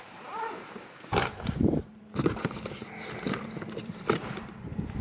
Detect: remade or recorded remade